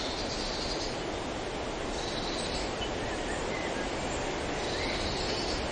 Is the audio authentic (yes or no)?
yes